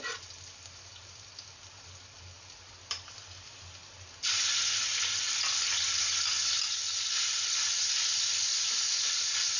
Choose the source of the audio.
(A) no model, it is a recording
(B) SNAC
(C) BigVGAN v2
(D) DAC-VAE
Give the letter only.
A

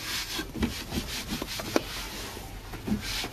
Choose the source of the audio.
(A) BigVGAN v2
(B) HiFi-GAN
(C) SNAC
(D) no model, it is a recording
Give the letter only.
D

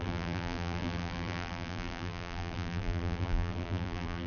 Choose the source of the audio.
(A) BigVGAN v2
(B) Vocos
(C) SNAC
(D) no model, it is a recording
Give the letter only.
A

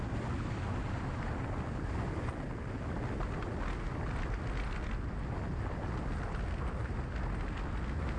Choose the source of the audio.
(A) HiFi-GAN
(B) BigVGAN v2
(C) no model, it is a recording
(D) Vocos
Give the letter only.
C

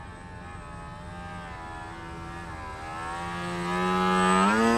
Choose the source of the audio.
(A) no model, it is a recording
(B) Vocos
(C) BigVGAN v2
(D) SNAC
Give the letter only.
A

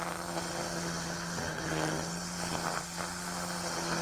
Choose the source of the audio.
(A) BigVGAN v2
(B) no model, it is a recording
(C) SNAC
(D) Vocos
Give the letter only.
B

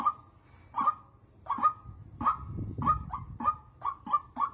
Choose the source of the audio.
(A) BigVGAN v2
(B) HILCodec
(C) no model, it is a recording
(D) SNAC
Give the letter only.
C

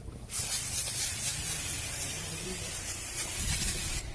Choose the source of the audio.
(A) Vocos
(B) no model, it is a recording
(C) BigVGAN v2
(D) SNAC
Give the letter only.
C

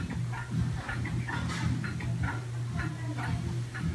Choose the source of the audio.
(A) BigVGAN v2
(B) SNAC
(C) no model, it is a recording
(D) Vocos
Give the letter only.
C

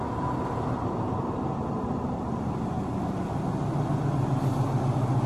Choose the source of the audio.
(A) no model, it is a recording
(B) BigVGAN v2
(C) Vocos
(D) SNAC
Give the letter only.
A